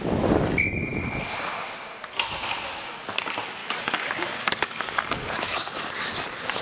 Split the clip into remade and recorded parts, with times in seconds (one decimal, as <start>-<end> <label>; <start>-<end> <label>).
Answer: 0.0-3.6 recorded; 3.6-5.8 remade; 5.8-6.6 recorded